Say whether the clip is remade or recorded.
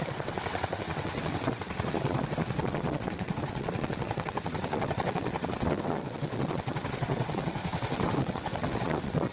remade